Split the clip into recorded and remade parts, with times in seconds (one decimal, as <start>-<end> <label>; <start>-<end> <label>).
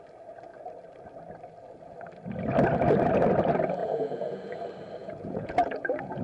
0.0-3.8 recorded; 3.8-4.6 remade; 4.6-5.0 recorded; 5.0-6.2 remade